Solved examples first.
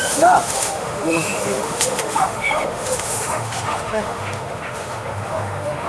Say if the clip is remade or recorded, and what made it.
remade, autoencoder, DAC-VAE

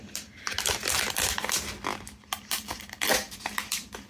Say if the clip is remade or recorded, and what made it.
recorded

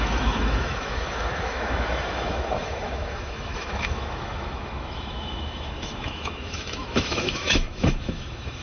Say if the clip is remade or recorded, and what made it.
remade, autoencoder, DAC-VAE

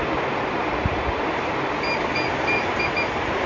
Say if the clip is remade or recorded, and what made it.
recorded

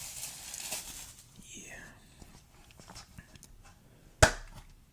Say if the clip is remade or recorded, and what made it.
recorded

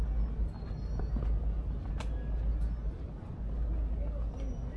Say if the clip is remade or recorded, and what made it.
recorded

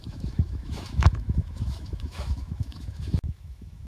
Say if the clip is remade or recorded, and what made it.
remade, autoencoder, DAC-VAE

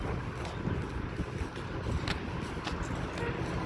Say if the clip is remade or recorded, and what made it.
recorded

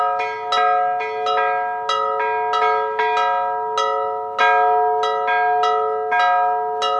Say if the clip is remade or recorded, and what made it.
recorded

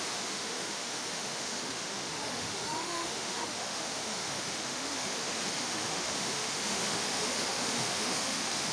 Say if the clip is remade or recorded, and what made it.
remade, autoencoder, DAC-VAE